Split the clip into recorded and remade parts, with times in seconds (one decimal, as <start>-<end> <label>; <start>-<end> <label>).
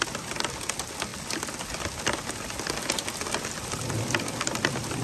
0.0-5.0 recorded